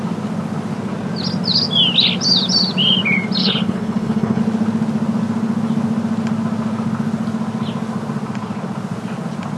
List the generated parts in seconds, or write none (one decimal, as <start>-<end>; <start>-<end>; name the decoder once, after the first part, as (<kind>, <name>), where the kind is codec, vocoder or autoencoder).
3.4-4.4 (codec, HILCodec)